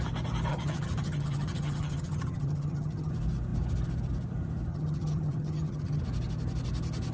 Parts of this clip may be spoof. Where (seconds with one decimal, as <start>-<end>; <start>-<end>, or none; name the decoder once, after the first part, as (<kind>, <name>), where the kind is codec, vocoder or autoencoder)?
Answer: 0.5-3.1 (vocoder, HiFi-GAN); 4.7-6.0